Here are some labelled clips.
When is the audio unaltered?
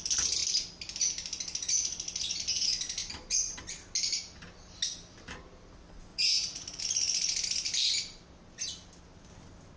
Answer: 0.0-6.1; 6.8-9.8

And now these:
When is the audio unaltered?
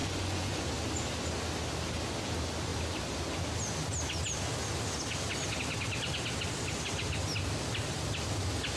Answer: 0.6-8.8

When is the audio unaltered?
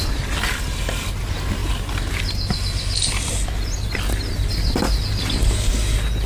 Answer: 0.0-6.3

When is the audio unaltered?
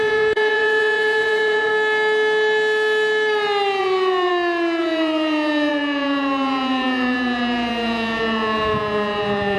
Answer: 1.7-3.8; 4.3-4.8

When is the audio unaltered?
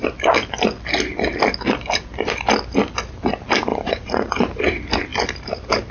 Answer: 0.0-3.7; 4.6-5.9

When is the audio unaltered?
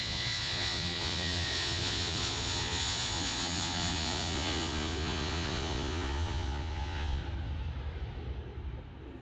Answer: 7.2-9.2